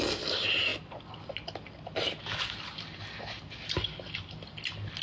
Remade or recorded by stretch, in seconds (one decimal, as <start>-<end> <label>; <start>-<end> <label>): 0.0-5.0 recorded